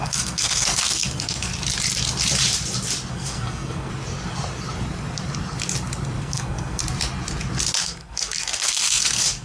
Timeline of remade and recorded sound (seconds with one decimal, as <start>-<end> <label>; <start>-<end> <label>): 0.0-1.5 remade; 1.5-3.1 recorded; 3.1-3.9 remade; 3.9-6.2 recorded; 6.2-6.8 remade; 6.8-7.8 recorded; 7.8-9.4 remade

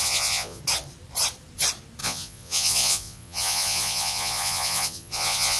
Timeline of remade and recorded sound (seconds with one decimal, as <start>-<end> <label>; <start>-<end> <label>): 0.0-0.6 remade; 0.6-2.0 recorded; 2.0-5.6 remade

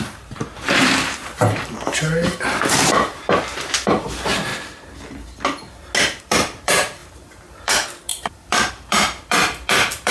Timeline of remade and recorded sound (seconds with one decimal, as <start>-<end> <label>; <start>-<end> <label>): 0.0-4.5 remade; 4.5-6.2 recorded; 6.2-10.1 remade